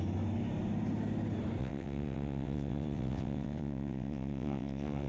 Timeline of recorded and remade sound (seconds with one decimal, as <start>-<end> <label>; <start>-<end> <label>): 0.0-1.6 recorded; 1.6-5.1 remade